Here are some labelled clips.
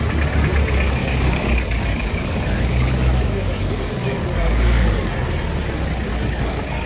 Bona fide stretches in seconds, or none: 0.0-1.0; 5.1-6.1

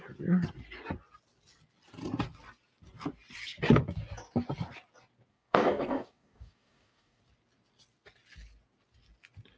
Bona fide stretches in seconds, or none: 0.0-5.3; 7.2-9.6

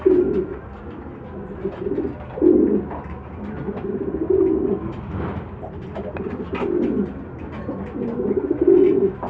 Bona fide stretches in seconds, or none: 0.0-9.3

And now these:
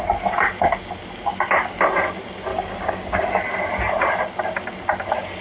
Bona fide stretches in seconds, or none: 0.0-2.5; 3.3-5.4

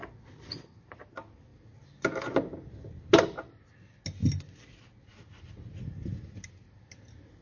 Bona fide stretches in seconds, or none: 0.0-7.4